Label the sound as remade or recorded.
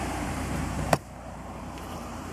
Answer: remade